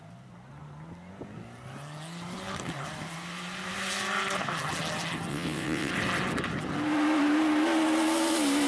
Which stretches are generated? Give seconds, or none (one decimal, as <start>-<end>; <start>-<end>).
5.3-5.9